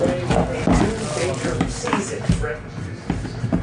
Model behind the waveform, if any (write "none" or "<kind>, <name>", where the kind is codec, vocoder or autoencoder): none